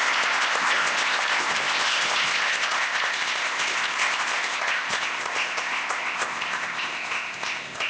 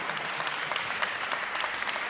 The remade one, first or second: first